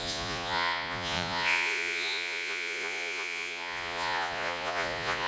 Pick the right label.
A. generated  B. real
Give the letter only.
A